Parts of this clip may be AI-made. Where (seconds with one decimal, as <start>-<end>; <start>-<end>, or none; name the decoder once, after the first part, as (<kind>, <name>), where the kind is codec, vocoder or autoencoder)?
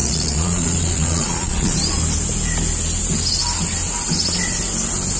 0.0-1.7 (vocoder, Vocos)